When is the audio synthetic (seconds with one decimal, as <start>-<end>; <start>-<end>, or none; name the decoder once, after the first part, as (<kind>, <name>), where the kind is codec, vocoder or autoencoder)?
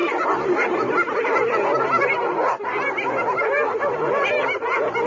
none